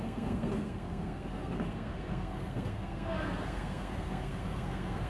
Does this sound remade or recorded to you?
remade